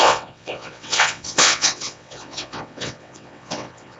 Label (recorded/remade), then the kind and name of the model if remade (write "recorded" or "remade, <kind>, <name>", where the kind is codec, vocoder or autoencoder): remade, vocoder, WaveNeXt